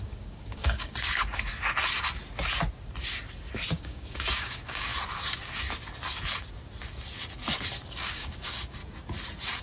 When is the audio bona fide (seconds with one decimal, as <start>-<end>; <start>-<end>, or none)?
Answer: 1.5-3.7; 4.9-7.9; 8.8-9.6